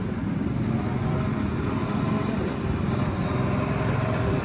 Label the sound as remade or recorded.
recorded